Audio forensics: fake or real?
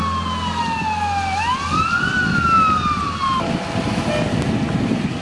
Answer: real